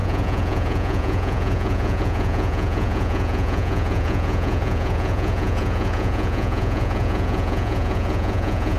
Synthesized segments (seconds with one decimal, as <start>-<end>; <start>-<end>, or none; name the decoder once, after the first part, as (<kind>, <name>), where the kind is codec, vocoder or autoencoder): 0.0-8.8 (vocoder, Vocos)

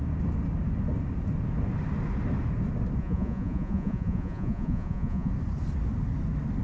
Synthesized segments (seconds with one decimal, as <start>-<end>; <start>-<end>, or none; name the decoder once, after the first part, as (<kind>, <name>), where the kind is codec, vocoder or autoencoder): 3.0-5.3 (vocoder, Vocos)

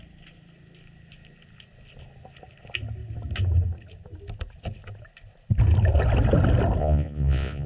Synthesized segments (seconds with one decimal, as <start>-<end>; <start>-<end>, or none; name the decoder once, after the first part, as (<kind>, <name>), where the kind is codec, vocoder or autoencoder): 6.8-7.7 (vocoder, Vocos)

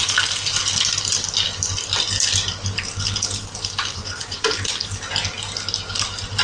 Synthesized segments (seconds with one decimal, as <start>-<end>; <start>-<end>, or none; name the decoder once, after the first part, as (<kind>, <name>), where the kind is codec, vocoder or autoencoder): 3.9-4.5 (vocoder, Vocos)

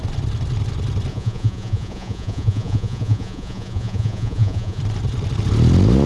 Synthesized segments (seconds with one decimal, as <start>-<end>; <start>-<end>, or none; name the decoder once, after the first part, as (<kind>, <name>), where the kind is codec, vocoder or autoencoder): 1.1-4.8 (vocoder, Vocos)

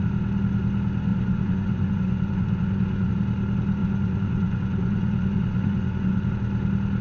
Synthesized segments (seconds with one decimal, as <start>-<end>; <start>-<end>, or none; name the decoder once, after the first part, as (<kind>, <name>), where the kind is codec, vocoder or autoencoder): 1.1-3.1 (vocoder, Vocos); 3.8-6.3

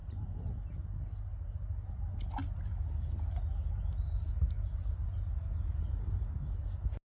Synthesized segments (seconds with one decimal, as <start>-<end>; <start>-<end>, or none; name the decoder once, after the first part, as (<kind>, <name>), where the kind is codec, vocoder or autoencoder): none